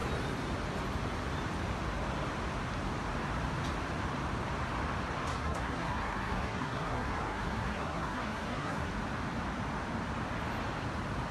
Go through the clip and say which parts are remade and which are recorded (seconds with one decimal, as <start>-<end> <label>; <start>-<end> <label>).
0.0-5.3 recorded; 5.3-8.9 remade; 8.9-11.3 recorded